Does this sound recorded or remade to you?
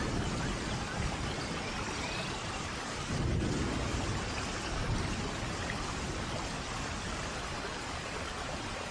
recorded